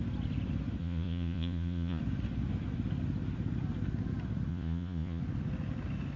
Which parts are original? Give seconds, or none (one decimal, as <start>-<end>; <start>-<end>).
0.0-0.8; 2.0-4.5; 5.2-6.2